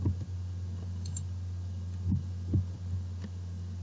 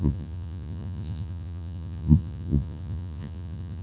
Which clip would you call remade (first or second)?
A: second